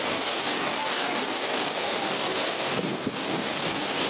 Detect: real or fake fake